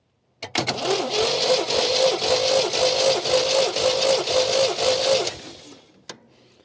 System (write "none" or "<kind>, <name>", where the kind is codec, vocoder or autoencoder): none